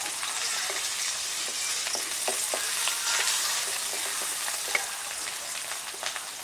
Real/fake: real